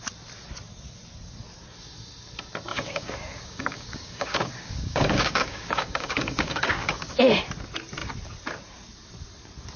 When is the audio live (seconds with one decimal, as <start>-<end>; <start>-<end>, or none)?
0.0-2.7; 7.2-9.8